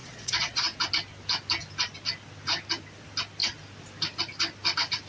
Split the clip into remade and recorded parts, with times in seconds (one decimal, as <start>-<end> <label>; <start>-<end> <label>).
0.0-0.8 remade; 0.8-5.1 recorded